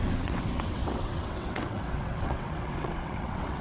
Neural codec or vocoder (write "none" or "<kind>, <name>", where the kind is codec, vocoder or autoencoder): vocoder, WaveNeXt